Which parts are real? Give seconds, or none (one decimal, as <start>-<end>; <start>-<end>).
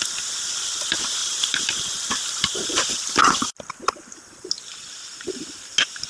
0.0-1.2; 2.1-3.2; 4.2-6.1